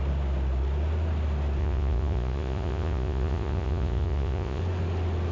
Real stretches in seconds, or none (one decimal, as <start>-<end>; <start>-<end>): 0.0-1.6; 4.6-5.3